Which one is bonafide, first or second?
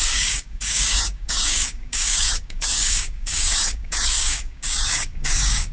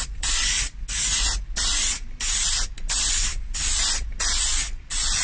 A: second